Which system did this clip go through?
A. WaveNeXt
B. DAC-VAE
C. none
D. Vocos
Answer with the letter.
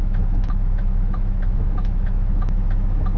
B